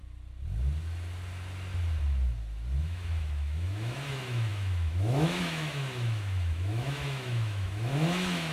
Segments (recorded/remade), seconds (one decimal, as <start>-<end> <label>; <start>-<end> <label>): 0.0-2.8 recorded; 2.8-8.5 remade